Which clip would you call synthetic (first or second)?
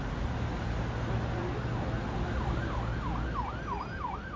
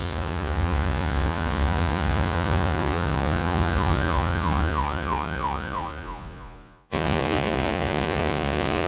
second